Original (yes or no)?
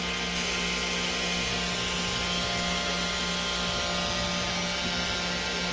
yes